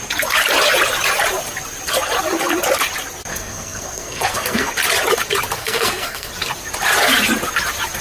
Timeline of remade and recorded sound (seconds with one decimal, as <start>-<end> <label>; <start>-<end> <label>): 0.0-3.3 recorded; 3.3-4.7 remade; 4.7-5.6 recorded; 5.6-6.3 remade; 6.3-8.0 recorded